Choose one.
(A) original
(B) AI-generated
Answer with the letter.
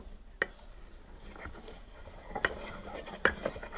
A